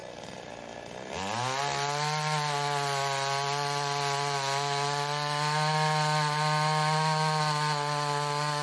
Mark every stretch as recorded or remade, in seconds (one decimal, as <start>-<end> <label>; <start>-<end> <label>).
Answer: 0.0-0.5 remade; 0.5-8.6 recorded